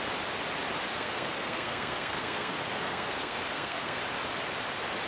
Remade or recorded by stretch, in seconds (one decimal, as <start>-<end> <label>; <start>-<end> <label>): 0.0-0.9 recorded; 0.9-4.0 remade; 4.0-5.1 recorded